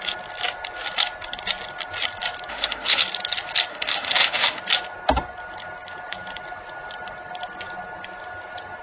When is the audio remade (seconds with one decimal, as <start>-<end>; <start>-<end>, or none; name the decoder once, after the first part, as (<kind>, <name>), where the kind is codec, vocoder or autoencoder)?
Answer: 2.5-3.0 (autoencoder, DAC-VAE); 3.7-4.6